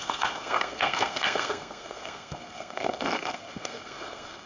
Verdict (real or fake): fake